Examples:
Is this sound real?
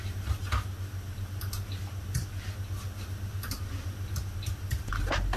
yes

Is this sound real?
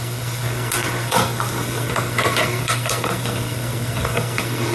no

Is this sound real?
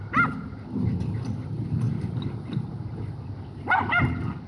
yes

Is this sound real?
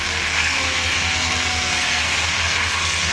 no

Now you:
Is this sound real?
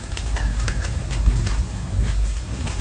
no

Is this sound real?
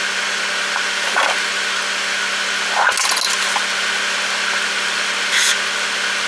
yes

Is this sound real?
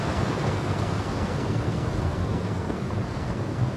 no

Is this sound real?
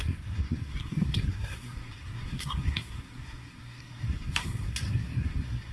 no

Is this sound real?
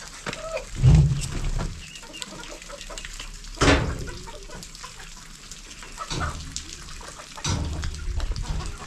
yes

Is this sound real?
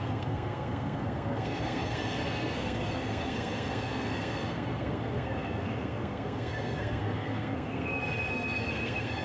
no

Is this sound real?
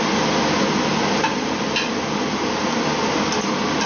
yes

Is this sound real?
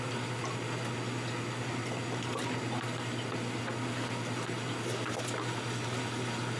yes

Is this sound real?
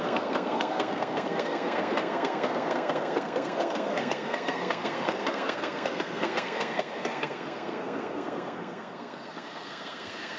no